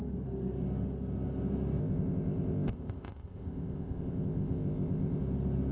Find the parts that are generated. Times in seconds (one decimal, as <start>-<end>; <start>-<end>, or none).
1.8-5.2